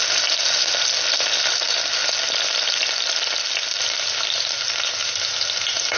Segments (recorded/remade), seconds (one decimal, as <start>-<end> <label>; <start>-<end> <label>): 0.0-6.0 recorded